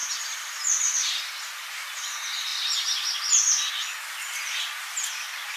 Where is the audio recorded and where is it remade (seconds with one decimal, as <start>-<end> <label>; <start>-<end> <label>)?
0.0-1.1 remade; 1.1-2.5 recorded; 2.5-3.7 remade; 3.7-4.4 recorded; 4.4-5.6 remade

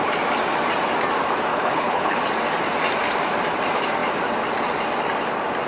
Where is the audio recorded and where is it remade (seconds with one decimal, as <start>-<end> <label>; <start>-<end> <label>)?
0.0-1.5 recorded; 1.5-2.2 remade; 2.2-5.7 recorded

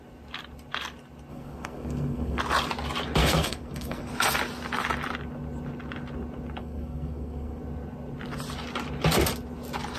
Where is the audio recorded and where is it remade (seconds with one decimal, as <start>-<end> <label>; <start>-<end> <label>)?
0.0-1.3 recorded; 1.3-2.4 remade; 2.4-3.2 recorded; 3.2-4.1 remade; 4.1-6.6 recorded; 6.6-7.6 remade; 7.6-10.0 recorded

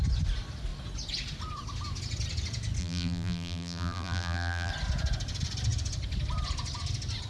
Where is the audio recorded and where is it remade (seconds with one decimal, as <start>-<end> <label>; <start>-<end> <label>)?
0.0-2.8 recorded; 2.8-4.7 remade; 4.7-7.3 recorded